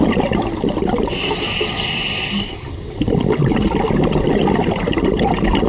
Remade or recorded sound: recorded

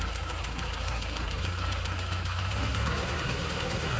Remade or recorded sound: remade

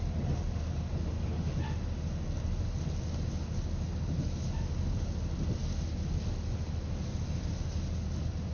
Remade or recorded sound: recorded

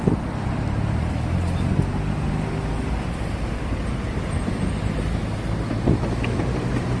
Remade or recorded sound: recorded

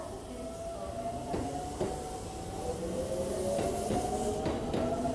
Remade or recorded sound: recorded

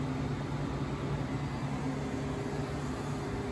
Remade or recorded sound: recorded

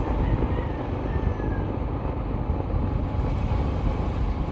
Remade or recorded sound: recorded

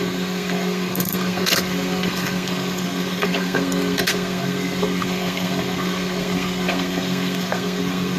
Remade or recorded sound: remade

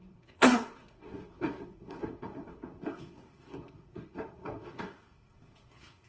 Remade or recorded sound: remade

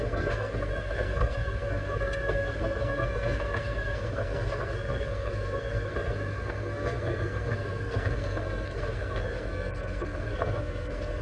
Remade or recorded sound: remade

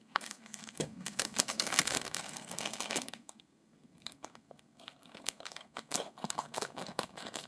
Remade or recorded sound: remade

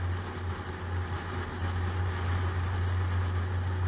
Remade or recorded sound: recorded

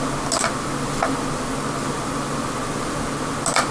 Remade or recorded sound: recorded